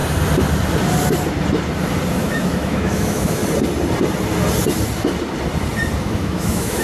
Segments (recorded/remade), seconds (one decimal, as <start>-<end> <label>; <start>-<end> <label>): 0.0-2.1 recorded; 2.1-3.4 remade; 3.4-6.0 recorded; 6.0-6.8 remade